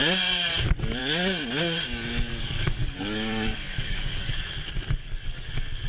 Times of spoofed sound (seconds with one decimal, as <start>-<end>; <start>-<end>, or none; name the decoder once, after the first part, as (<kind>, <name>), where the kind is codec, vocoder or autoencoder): 2.3-4.5 (codec, DAC); 5.0-5.5